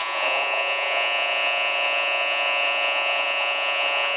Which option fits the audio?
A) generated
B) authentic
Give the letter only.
A